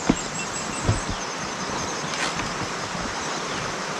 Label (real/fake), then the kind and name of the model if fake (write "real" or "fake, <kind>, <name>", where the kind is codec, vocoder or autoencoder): real